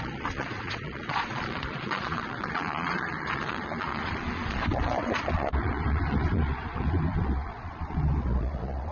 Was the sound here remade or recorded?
remade